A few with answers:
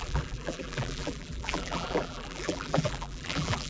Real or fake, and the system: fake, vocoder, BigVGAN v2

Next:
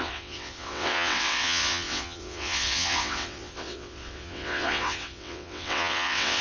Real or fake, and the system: fake, vocoder, WaveNeXt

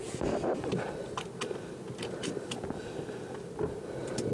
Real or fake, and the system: real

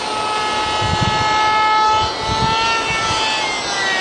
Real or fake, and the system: real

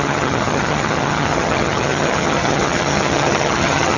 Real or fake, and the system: fake, vocoder, HiFi-GAN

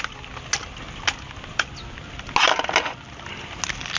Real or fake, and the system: real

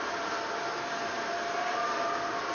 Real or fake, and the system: real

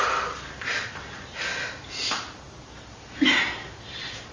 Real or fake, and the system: real